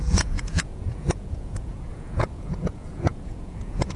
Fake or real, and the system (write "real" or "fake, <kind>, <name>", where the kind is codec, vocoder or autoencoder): fake, vocoder, Vocos